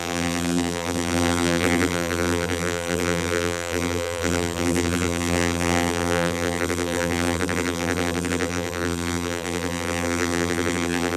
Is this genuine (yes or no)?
no